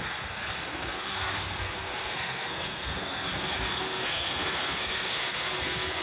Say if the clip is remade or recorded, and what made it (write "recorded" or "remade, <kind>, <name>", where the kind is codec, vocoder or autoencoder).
remade, codec, SNAC